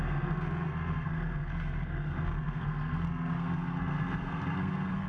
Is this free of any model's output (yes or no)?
no